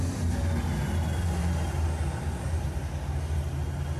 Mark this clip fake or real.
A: real